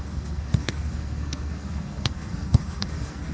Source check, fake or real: fake